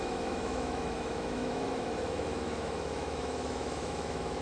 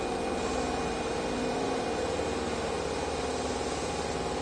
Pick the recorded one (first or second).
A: second